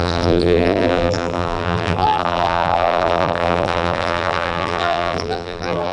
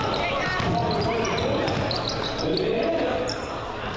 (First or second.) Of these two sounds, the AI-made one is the first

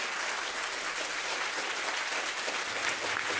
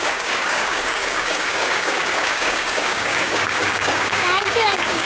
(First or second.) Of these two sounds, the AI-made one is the second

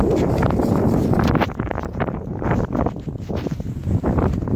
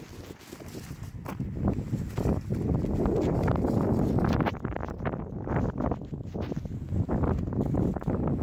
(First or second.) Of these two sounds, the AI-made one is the first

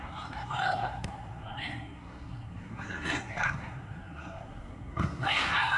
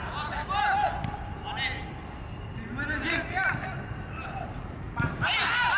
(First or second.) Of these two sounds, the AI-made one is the first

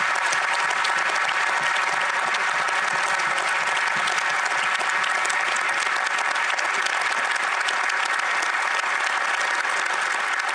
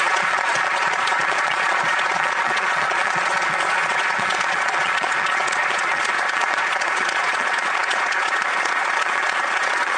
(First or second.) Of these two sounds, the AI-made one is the second